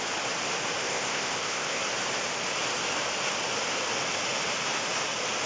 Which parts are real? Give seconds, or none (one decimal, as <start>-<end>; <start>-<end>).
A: 0.0-0.8; 1.8-5.5